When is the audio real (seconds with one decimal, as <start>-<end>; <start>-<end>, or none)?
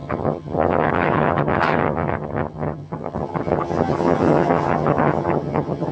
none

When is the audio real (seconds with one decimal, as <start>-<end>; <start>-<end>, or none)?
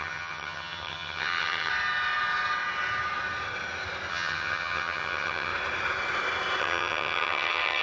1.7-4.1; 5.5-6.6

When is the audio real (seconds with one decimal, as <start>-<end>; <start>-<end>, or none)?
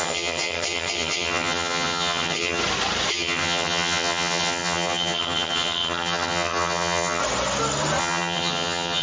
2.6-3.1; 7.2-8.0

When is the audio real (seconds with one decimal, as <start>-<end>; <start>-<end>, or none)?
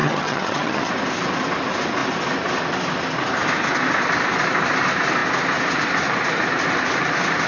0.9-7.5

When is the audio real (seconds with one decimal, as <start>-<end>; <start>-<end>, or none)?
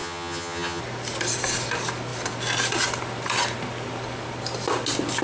0.8-5.2